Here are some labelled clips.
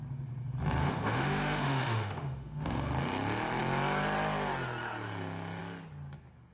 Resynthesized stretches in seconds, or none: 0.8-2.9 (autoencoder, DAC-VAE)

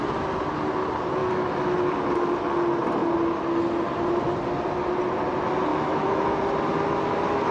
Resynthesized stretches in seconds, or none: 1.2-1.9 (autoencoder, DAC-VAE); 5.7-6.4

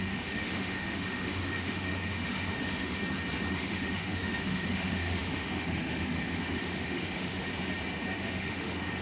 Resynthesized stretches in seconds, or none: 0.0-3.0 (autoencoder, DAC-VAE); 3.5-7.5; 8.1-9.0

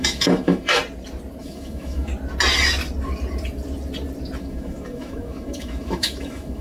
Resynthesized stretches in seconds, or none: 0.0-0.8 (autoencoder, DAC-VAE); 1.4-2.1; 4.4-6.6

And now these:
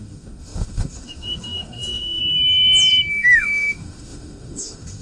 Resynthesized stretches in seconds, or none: 0.0-2.2 (autoencoder, DAC-VAE); 3.1-5.0